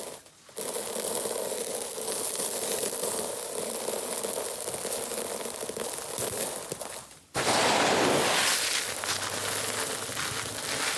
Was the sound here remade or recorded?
recorded